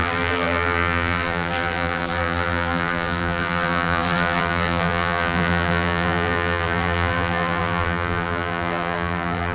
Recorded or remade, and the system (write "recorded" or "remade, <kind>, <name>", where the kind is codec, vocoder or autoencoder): remade, vocoder, BigVGAN v2